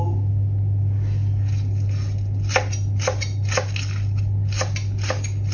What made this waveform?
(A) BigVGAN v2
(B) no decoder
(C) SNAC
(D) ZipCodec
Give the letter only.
B